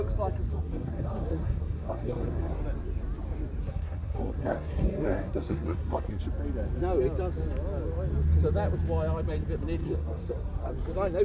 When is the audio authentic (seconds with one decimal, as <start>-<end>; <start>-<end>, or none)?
0.0-0.5; 2.6-3.6; 6.2-9.8; 10.7-11.2